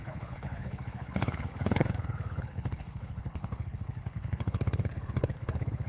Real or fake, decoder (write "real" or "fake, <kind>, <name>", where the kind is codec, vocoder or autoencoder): fake, codec, HILCodec